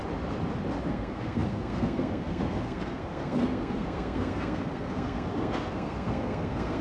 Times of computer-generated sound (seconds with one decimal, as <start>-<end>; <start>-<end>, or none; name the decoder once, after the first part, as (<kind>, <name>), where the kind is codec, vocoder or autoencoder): 0.9-6.8 (codec, SNAC)